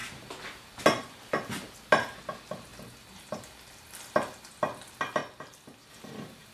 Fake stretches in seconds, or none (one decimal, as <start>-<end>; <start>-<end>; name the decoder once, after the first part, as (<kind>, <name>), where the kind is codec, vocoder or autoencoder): 2.7-4.6 (vocoder, BigVGAN v2); 5.2-5.9